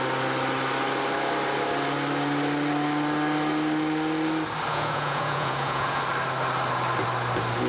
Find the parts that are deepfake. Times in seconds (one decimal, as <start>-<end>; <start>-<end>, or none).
4.7-6.0